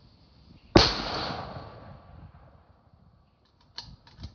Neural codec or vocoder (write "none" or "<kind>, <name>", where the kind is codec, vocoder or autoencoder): none